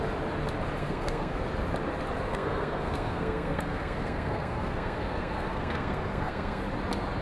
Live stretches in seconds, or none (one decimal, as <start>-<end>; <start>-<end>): 0.0-0.8; 1.4-2.3; 6.6-7.2